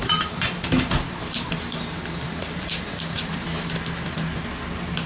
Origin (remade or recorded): recorded